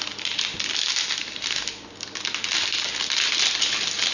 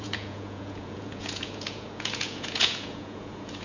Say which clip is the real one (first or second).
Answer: first